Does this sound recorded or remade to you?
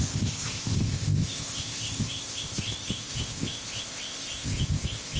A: remade